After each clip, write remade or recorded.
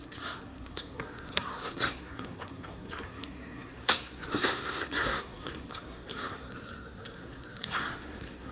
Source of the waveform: remade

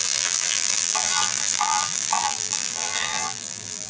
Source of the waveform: remade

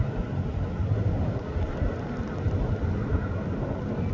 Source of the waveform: recorded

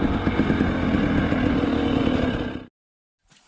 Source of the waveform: recorded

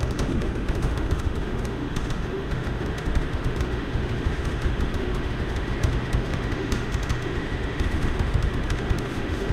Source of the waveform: remade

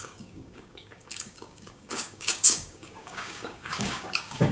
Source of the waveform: remade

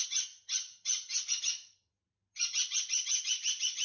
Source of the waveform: recorded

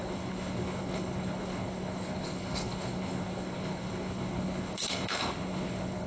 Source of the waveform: remade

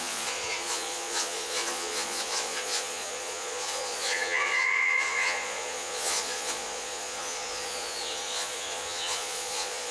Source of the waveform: remade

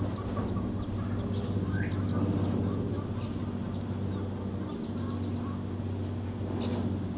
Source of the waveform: recorded